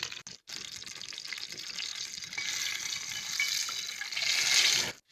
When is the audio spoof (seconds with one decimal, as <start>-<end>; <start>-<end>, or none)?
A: none

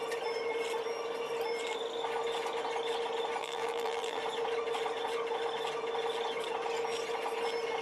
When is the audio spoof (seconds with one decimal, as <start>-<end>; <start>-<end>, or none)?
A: 3.4-4.2

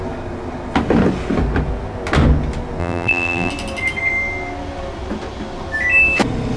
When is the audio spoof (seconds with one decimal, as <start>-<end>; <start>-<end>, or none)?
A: 2.8-3.5